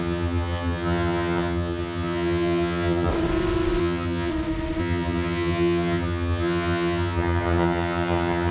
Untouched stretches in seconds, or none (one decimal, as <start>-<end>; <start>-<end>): 3.1-3.8; 4.3-4.8